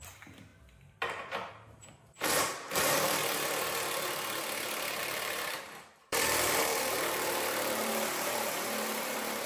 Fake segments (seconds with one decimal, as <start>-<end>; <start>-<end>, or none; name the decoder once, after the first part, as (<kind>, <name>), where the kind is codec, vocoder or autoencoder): 0.0-0.5 (vocoder, BigVGAN v2); 1.5-3.2; 5.0-9.5